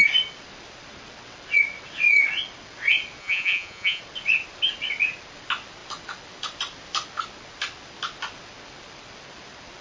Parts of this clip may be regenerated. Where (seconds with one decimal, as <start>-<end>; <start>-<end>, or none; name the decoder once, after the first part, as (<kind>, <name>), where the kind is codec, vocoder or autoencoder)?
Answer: 3.2-4.0 (vocoder, Vocos)